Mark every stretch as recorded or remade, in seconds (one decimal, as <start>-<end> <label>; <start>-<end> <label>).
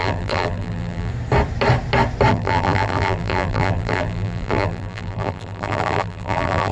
0.0-1.1 remade; 1.1-2.3 recorded; 2.3-6.7 remade